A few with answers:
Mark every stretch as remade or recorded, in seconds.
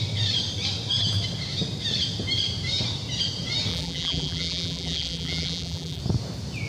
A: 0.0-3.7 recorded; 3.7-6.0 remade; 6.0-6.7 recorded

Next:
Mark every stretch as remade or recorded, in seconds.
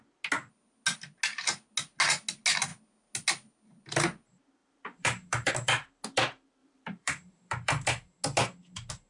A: 0.0-4.6 recorded; 4.6-5.5 remade; 5.5-6.6 recorded; 6.6-7.7 remade; 7.7-9.1 recorded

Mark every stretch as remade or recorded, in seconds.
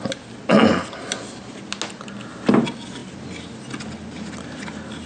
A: 0.0-5.1 recorded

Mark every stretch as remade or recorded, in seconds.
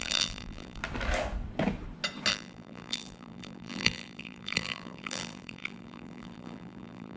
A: 0.0-0.8 remade; 0.8-2.3 recorded; 2.3-7.2 remade